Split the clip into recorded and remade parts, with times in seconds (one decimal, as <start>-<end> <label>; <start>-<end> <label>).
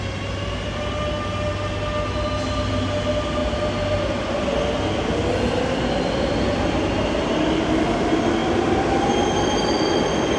0.0-10.4 recorded